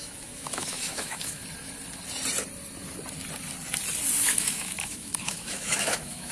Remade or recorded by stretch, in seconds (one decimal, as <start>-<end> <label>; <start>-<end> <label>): 0.0-1.4 remade; 1.4-4.2 recorded; 4.2-6.3 remade